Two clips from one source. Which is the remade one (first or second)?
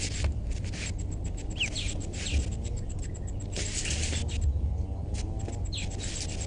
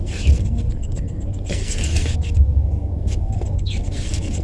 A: second